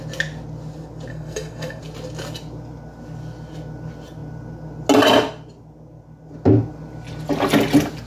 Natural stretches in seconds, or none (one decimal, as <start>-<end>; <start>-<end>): 0.0-1.1; 1.8-8.1